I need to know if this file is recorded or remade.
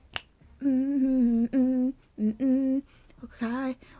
recorded